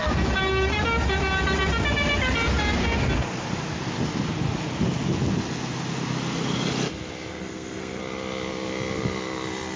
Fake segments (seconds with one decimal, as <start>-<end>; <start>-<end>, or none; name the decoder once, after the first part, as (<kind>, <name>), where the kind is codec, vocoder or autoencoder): 7.3-8.0 (codec, SNAC)